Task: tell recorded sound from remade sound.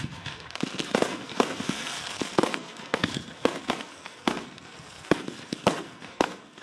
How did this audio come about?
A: remade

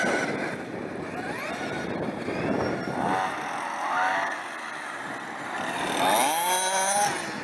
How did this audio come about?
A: recorded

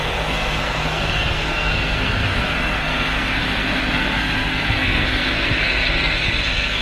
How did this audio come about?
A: remade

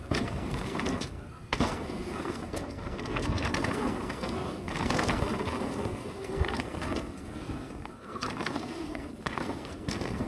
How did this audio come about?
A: remade